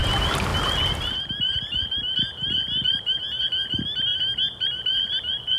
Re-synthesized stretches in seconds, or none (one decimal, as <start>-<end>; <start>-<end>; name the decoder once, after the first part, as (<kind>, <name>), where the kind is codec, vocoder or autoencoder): none